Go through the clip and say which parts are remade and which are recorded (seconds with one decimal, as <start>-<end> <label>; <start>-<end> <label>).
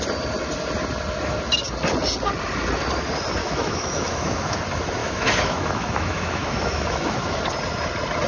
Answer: 0.0-3.4 recorded; 3.4-4.6 remade; 4.6-5.0 recorded; 5.0-7.4 remade; 7.4-8.3 recorded